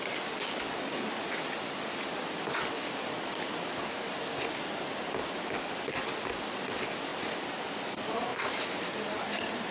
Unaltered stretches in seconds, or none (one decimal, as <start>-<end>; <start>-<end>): 0.0-7.1; 7.6-8.3